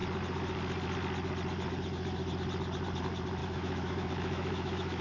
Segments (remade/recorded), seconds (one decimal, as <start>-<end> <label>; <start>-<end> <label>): 0.0-3.4 recorded; 3.4-5.0 remade